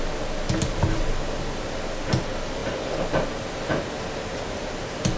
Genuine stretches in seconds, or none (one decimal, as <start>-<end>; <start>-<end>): 0.0-5.2